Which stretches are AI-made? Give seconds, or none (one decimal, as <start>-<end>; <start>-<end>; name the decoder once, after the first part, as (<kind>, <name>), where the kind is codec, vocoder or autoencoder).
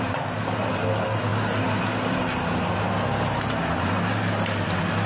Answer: none